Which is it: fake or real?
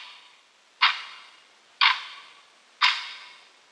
real